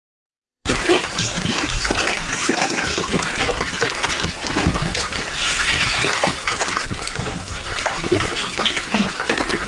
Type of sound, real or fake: fake